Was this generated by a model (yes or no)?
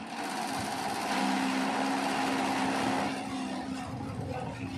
no